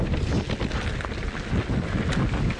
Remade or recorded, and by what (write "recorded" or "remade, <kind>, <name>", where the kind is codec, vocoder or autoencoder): recorded